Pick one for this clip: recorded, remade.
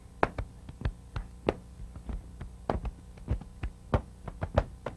recorded